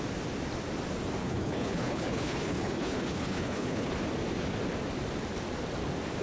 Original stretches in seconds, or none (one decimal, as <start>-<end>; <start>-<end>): 0.0-1.2; 3.9-6.2